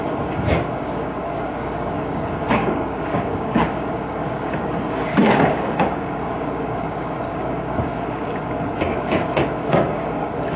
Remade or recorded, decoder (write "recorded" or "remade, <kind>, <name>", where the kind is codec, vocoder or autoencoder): remade, codec, DAC